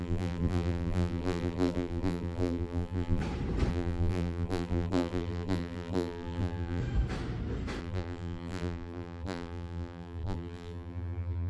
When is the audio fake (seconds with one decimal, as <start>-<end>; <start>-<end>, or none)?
0.0-3.2; 3.7-6.8; 7.8-11.5